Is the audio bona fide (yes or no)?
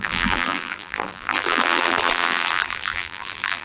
no